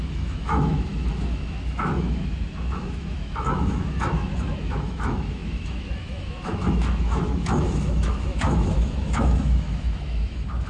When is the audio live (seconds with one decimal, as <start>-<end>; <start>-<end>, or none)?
none